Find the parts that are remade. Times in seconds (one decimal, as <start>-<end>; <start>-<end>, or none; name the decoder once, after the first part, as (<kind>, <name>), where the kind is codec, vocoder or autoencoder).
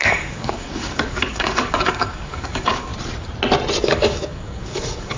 0.0-2.9 (codec, DAC); 3.8-5.2